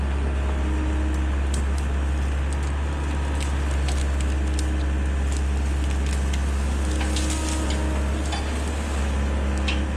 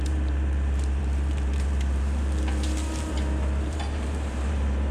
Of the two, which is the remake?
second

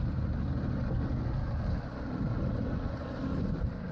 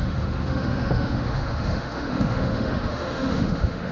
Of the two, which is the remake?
second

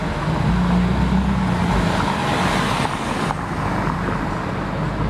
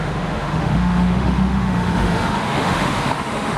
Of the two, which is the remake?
second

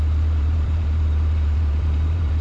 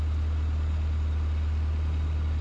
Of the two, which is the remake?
first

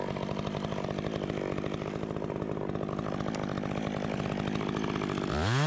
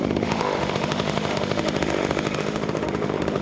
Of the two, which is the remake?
second